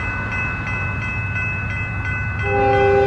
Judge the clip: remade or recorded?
recorded